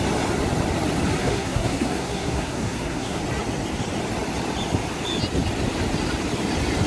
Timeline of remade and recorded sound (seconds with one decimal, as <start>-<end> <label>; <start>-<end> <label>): 0.0-1.2 recorded; 1.2-3.2 remade; 3.2-6.9 recorded